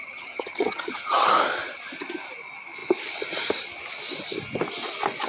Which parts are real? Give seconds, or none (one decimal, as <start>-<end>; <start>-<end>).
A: 1.3-5.3